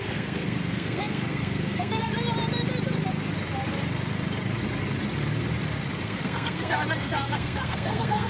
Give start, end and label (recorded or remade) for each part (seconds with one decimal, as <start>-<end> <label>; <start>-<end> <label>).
0.0-2.1 remade; 2.1-6.0 recorded; 6.0-8.3 remade